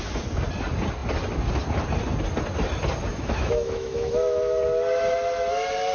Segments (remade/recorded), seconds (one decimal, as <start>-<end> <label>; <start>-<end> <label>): 0.0-3.1 recorded; 3.1-4.6 remade; 4.6-5.9 recorded